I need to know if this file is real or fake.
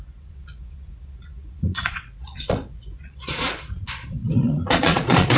fake